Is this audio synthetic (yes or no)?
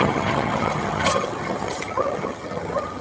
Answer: yes